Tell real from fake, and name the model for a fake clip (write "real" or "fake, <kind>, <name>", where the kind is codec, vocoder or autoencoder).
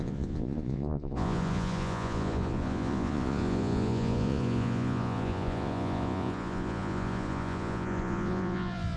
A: fake, vocoder, Vocos